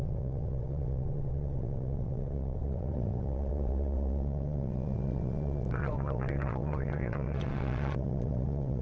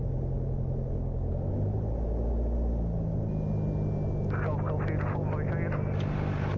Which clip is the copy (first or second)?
first